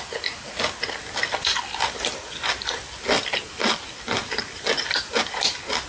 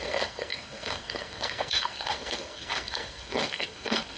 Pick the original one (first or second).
first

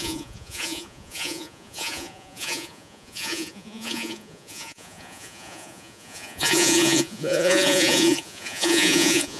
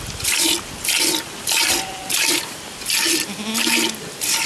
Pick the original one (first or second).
second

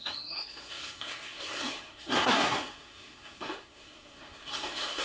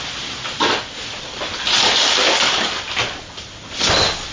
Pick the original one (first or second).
second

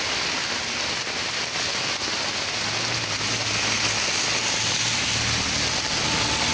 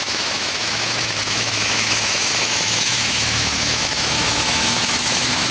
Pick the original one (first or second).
first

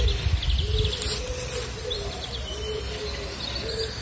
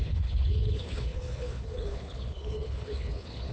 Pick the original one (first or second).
first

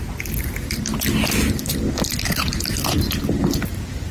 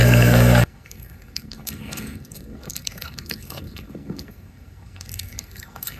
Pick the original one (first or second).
first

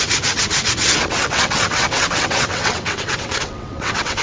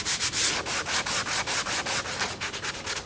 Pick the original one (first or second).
second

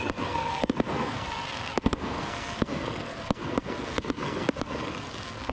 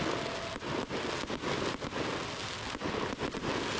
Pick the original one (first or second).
second